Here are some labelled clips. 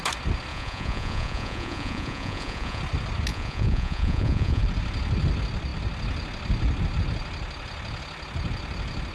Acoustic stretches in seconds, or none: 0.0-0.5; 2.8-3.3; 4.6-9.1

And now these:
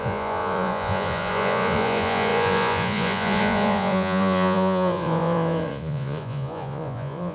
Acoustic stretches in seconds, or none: none